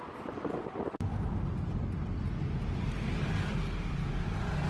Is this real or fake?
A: real